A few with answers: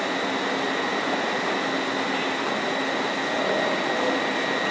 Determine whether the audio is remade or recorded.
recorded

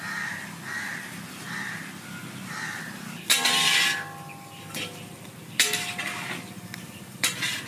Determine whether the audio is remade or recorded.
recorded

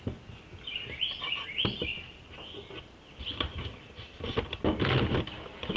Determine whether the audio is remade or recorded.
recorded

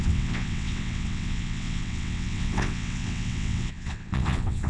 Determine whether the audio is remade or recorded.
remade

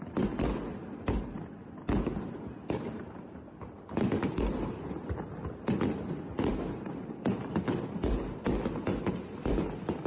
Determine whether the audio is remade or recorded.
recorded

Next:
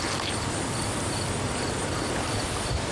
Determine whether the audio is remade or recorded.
recorded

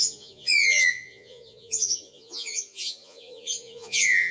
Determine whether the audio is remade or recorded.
remade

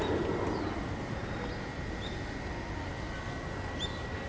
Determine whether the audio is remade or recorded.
recorded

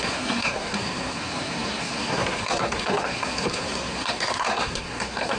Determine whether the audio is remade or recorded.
remade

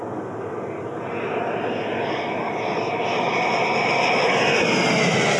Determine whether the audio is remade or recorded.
recorded